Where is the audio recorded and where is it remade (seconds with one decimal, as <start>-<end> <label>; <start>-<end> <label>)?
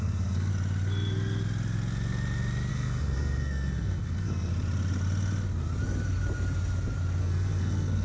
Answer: 0.0-0.5 remade; 0.5-2.7 recorded; 2.7-4.5 remade; 4.5-7.2 recorded; 7.2-8.0 remade